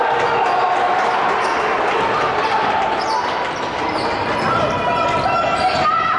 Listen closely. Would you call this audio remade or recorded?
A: recorded